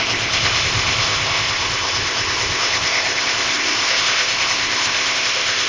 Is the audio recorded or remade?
remade